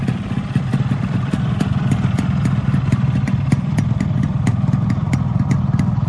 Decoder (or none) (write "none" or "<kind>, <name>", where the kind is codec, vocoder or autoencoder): none